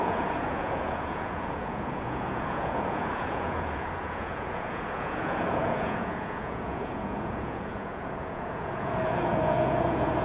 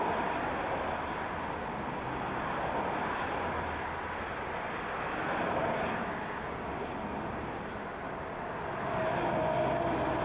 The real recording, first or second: second